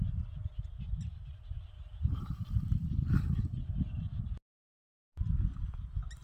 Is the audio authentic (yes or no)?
yes